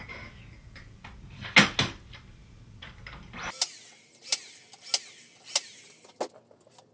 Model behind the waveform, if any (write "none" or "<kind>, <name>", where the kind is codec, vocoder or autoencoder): none